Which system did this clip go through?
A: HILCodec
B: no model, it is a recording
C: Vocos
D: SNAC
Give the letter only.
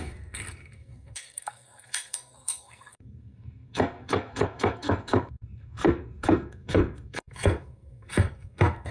D